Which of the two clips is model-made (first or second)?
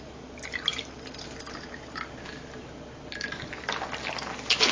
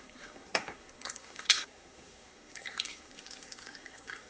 second